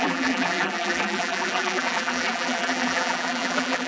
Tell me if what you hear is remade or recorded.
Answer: remade